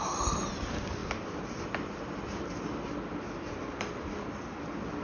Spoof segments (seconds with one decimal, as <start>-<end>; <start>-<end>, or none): none